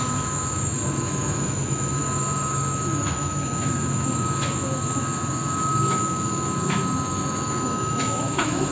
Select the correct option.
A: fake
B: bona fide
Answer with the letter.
A